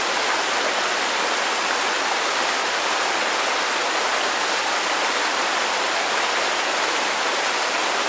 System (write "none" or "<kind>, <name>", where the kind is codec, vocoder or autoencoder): none